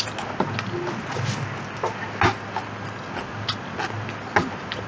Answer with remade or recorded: recorded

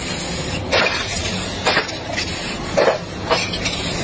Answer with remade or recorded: recorded